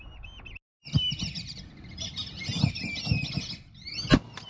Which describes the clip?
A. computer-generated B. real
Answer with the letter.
B